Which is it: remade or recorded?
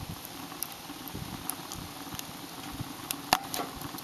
remade